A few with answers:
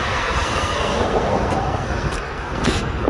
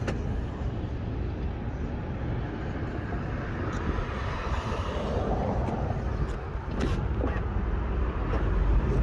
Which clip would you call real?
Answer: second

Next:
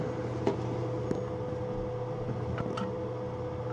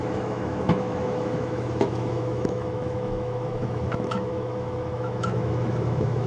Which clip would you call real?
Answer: first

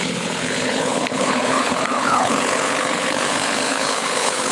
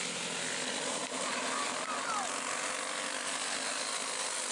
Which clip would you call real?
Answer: second